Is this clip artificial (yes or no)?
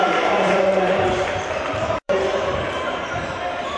yes